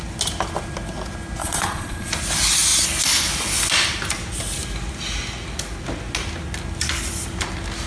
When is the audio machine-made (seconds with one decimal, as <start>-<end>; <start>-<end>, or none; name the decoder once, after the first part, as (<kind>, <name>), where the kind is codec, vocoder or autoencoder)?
1.4-2.1 (vocoder, Vocos)